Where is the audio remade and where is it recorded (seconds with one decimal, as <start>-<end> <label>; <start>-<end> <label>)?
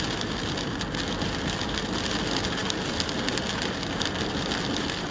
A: 0.0-5.1 recorded